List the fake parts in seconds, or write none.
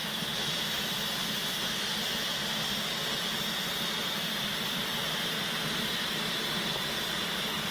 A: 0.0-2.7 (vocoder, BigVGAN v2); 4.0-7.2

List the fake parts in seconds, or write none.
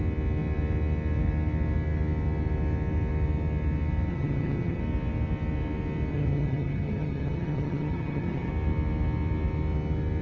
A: 4.1-4.8 (vocoder, HiFi-GAN); 6.1-8.5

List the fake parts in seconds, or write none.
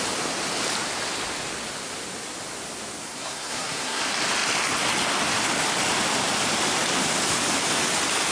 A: 3.0-4.0 (codec, SNAC)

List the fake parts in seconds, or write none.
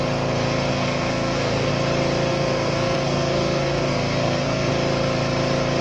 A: 0.7-1.7 (codec, SNAC); 2.3-4.7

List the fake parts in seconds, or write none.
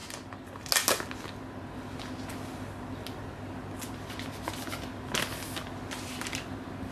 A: none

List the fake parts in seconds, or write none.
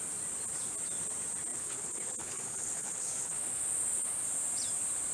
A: 1.5-3.6 (codec, HILCodec)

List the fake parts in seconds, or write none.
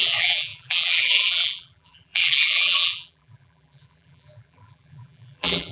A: 0.0-5.7 (vocoder, BigVGAN v2)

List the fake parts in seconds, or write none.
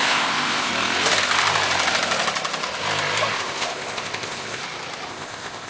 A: 0.0-0.7 (codec, ZipCodec); 3.3-4.6; 5.1-5.7